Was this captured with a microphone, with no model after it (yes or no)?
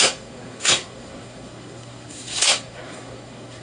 no